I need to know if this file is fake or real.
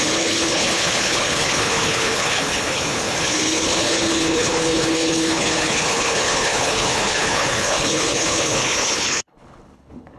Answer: fake